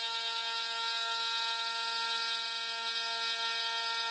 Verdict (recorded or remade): recorded